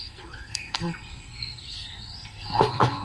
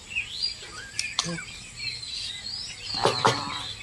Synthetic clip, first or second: first